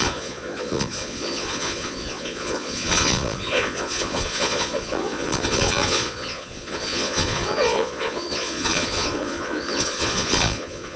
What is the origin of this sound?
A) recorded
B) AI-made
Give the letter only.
B